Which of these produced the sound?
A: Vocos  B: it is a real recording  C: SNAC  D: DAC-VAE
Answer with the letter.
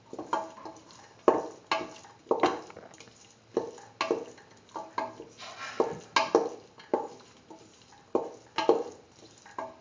B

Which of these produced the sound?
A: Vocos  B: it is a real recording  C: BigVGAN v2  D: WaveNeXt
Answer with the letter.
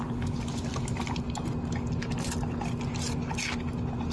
B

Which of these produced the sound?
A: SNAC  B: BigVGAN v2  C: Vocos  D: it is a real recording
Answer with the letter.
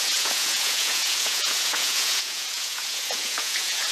C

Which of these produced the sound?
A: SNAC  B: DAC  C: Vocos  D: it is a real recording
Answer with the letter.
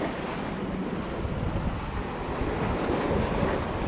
D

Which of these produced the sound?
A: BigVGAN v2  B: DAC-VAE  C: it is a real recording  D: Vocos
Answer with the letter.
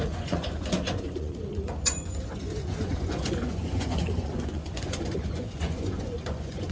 D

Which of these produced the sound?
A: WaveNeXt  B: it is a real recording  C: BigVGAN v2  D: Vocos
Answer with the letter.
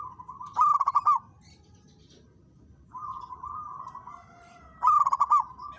B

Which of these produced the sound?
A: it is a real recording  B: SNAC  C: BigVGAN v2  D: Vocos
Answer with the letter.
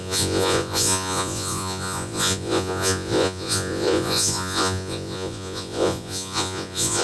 D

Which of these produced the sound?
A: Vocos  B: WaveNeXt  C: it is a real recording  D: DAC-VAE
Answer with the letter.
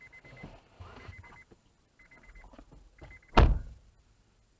C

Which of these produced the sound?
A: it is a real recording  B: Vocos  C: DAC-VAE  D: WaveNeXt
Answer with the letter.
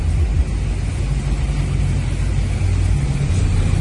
A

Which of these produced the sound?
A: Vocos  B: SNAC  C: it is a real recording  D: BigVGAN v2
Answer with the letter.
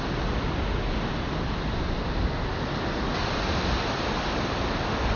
C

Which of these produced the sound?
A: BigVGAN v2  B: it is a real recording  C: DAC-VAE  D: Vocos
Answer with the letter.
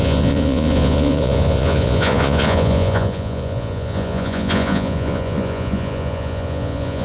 D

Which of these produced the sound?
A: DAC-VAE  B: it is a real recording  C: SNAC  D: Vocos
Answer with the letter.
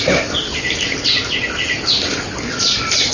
B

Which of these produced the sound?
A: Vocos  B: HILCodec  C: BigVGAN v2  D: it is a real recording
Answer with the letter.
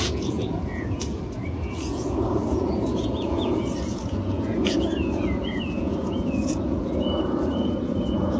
A